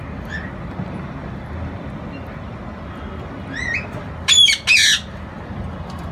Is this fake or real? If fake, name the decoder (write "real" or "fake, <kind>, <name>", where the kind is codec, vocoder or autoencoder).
real